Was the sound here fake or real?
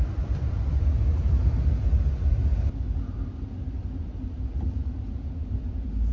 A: real